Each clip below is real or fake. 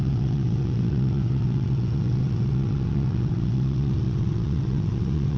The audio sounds fake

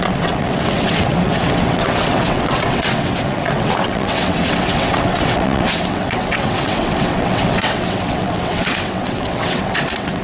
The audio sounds fake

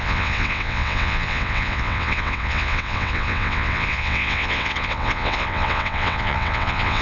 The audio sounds fake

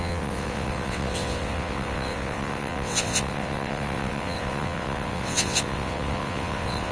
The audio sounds fake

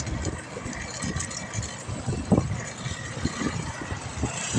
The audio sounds real